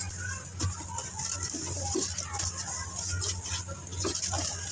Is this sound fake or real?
real